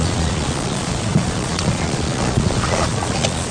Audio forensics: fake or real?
fake